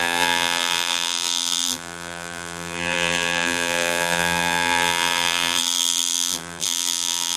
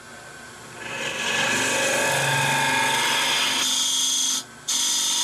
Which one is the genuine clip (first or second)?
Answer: second